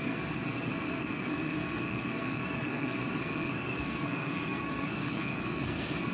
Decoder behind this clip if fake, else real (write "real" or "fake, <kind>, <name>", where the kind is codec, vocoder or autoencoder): fake, codec, SNAC